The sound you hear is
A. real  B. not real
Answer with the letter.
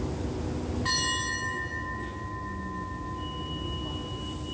A